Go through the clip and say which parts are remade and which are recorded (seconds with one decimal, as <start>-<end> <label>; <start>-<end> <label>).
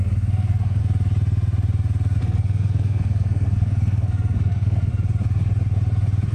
0.0-0.8 remade; 0.8-2.2 recorded; 2.2-4.9 remade; 4.9-6.3 recorded